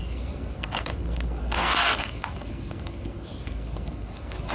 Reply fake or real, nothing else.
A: fake